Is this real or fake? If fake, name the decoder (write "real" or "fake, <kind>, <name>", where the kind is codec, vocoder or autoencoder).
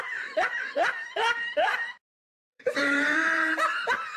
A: fake, vocoder, BigVGAN v2